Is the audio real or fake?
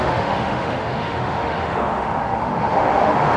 fake